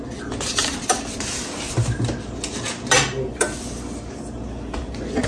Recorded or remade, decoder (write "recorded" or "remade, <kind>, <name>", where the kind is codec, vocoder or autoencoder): recorded